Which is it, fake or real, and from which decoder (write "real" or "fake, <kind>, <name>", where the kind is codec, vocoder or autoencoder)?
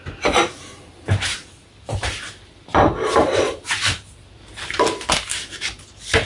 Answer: fake, vocoder, BigVGAN v2